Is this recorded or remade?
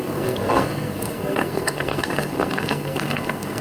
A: remade